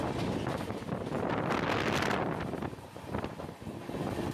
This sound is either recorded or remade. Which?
recorded